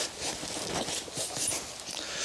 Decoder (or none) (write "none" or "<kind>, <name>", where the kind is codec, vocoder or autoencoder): none